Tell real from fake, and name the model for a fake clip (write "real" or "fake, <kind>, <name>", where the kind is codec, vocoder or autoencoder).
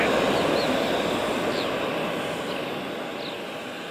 real